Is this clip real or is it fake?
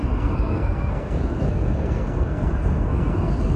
fake